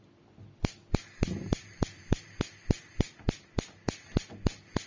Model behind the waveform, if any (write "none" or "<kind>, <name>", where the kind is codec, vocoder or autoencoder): none